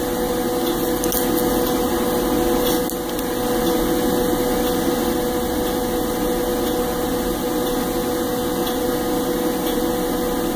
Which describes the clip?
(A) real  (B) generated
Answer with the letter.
A